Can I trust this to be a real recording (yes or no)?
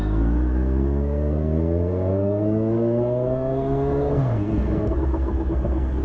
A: no